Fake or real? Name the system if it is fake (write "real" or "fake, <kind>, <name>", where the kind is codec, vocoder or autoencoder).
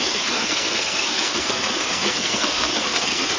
fake, codec, SNAC